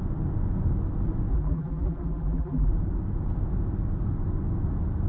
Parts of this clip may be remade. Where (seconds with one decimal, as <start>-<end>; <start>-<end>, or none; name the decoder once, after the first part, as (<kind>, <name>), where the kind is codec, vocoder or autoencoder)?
1.3-2.7 (vocoder, BigVGAN v2)